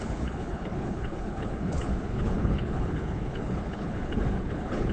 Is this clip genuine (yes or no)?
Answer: no